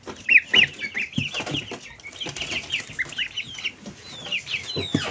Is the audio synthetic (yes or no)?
no